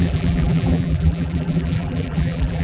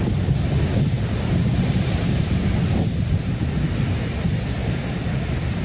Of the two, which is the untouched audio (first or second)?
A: second